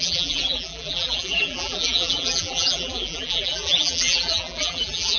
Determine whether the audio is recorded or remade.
remade